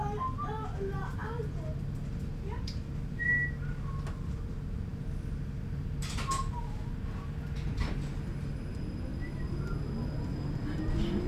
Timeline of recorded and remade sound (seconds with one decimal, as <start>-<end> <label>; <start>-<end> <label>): 0.0-11.3 recorded